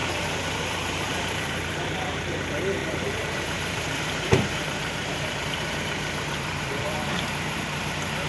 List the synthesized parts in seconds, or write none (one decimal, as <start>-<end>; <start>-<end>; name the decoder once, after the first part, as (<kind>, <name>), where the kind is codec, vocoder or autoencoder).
0.0-2.3 (vocoder, BigVGAN v2); 2.8-7.6